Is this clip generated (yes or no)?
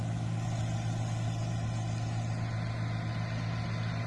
no